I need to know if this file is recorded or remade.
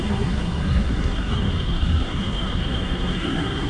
remade